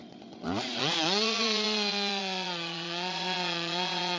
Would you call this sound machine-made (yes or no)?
yes